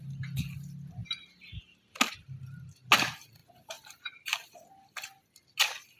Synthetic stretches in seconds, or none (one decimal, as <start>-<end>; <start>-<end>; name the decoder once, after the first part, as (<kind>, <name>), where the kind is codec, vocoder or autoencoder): 3.4-4.5 (vocoder, BigVGAN v2)